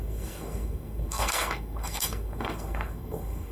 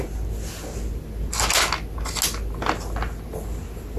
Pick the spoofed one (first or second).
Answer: first